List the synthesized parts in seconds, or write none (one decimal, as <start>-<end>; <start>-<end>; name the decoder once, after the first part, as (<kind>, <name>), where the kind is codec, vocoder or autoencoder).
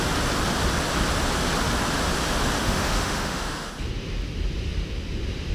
2.6-3.7 (autoencoder, DAC-VAE)